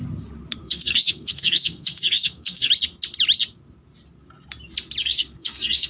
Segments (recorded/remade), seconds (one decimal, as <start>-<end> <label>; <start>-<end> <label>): 0.0-0.6 recorded; 0.6-2.7 remade; 2.7-5.0 recorded; 5.0-5.9 remade